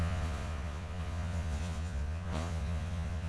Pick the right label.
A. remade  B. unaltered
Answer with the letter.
A